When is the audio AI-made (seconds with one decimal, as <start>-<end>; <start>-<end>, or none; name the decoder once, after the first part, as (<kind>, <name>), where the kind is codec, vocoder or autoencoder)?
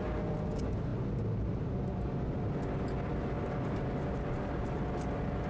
none